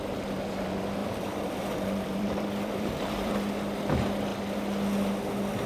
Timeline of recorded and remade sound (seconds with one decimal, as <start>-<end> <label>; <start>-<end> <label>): 0.0-1.0 recorded; 1.0-3.3 remade; 3.3-5.7 recorded